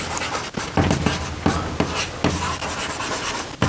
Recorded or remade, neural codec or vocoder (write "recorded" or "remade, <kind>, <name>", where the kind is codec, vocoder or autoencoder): recorded